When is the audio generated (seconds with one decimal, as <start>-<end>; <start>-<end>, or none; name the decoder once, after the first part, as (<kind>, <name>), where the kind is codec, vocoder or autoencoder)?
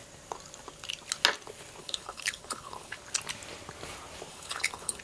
1.8-3.0 (codec, HILCodec); 4.3-5.0